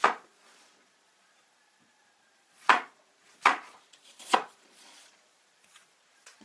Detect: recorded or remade remade